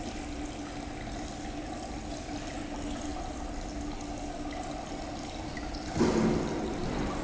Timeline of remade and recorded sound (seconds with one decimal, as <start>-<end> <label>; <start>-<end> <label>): 0.0-7.2 recorded